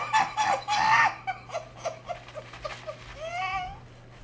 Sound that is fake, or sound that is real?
real